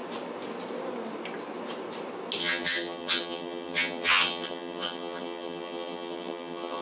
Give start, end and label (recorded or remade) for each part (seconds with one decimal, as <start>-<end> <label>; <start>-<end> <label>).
0.0-2.4 recorded; 2.4-6.8 remade